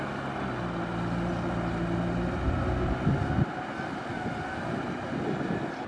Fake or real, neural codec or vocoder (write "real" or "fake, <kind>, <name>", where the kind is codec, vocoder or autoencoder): real